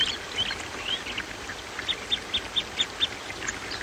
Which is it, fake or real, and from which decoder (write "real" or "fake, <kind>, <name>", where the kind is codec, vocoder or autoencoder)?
real